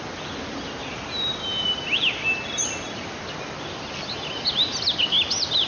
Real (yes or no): yes